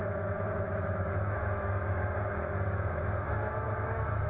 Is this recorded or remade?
remade